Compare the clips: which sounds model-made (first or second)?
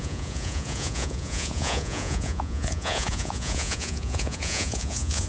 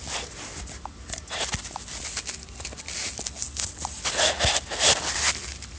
first